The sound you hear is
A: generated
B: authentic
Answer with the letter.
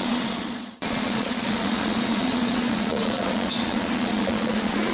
A